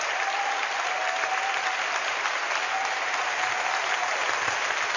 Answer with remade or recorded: recorded